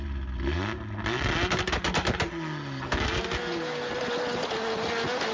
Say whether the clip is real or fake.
real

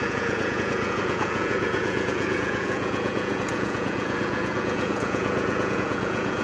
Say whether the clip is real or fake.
fake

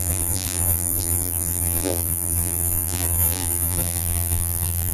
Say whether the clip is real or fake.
fake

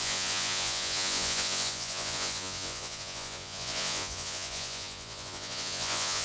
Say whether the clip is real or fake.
fake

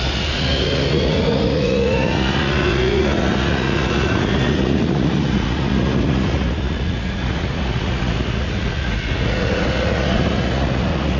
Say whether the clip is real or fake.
fake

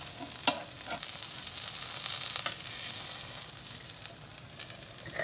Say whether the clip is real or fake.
real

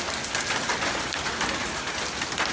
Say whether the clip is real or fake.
real